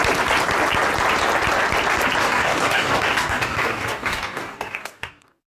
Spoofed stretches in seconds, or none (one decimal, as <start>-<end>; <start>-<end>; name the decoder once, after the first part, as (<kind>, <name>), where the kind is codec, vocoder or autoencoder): 2.2-5.6 (codec, DAC)